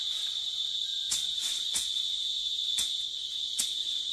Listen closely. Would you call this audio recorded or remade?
remade